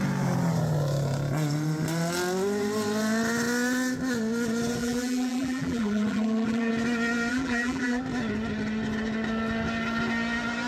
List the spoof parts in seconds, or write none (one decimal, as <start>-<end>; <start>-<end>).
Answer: 4.8-6.7; 7.3-8.0